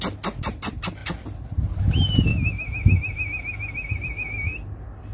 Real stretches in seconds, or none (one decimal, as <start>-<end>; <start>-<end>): 0.0-2.3; 3.9-5.1